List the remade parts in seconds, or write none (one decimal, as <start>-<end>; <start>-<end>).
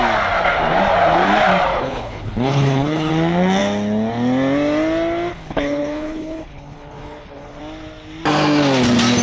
1.7-3.1; 5.3-7.6